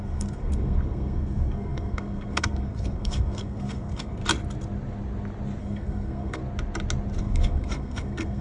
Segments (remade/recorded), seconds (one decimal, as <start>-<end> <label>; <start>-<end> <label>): 0.0-4.2 remade; 4.2-5.6 recorded; 5.6-6.4 remade; 6.4-7.2 recorded; 7.2-8.4 remade